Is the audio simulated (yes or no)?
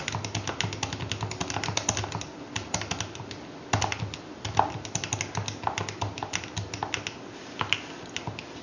no